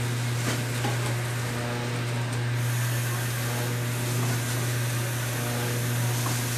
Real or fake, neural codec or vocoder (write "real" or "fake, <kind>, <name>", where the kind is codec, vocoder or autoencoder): real